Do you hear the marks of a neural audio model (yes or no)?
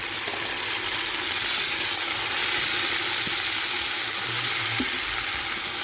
no